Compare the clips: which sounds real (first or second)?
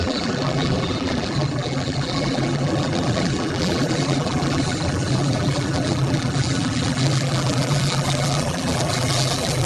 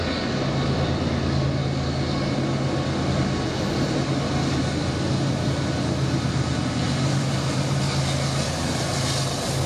second